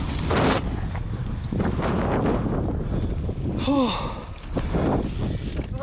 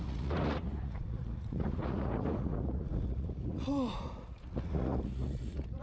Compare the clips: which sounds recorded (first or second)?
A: first